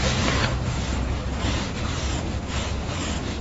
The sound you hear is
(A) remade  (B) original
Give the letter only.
B